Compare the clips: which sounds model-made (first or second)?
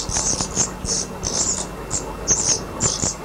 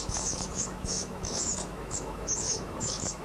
second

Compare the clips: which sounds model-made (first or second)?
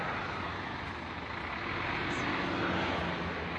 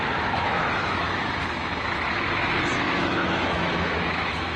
second